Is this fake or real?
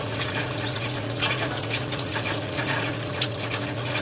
fake